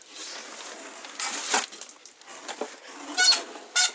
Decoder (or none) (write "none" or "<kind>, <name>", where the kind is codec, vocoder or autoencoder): none